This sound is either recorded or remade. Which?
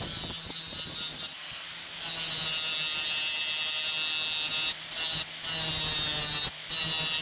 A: recorded